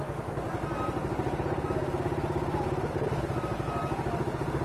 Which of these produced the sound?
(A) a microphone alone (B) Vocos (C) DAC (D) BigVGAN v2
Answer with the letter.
A